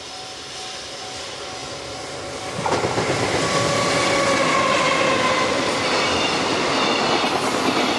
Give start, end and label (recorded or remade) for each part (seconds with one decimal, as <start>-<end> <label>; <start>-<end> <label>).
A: 0.0-8.0 recorded